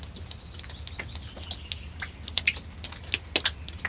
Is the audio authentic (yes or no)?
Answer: yes